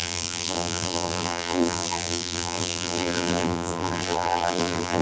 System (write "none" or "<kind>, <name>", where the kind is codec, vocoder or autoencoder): vocoder, BigVGAN v2